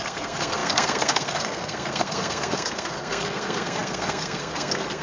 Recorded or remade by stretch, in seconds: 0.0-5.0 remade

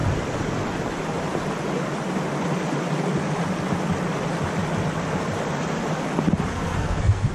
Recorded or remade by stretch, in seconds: 0.0-6.5 recorded; 6.5-7.3 remade

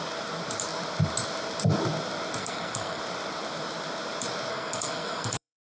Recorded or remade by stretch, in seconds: 0.0-2.4 recorded; 2.4-3.0 remade; 3.0-4.5 recorded; 4.5-5.6 remade

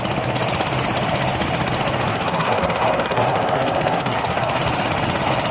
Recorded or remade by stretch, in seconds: 0.0-2.1 recorded; 2.1-4.6 remade; 4.6-5.5 recorded

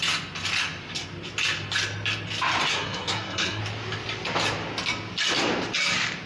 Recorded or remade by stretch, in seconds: 0.0-2.7 recorded; 2.7-3.6 remade; 3.6-6.3 recorded

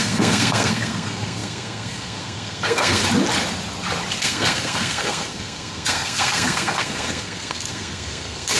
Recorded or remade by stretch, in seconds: 0.0-3.0 remade; 3.0-4.2 recorded; 4.2-8.6 remade

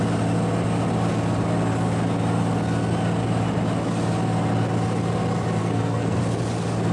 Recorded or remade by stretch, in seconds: 0.0-5.6 recorded; 5.6-6.2 remade; 6.2-6.9 recorded